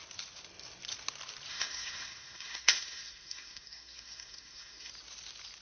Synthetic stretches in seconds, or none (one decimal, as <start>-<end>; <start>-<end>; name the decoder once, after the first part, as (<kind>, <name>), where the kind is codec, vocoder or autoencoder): 1.5-4.9 (codec, SNAC)